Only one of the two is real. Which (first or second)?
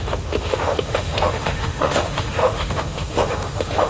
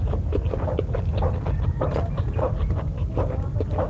second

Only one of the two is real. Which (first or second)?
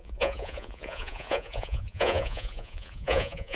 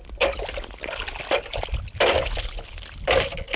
second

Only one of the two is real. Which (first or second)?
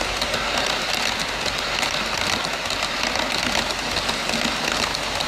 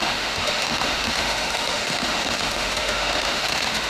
first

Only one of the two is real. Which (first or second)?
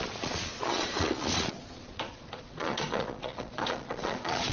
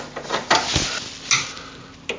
second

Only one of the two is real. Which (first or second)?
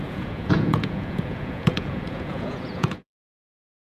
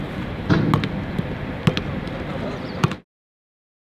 second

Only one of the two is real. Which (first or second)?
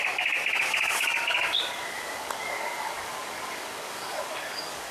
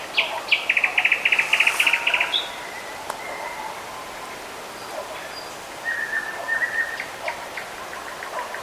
second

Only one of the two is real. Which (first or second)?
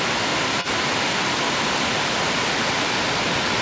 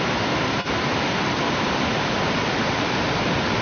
first